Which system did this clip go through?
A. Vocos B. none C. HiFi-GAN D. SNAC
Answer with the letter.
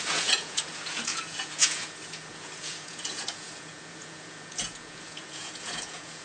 A